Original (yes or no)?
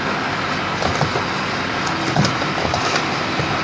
yes